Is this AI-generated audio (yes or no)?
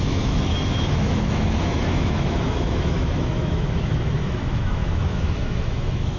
yes